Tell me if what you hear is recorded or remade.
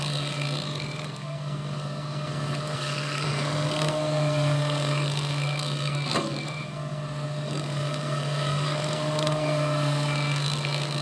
remade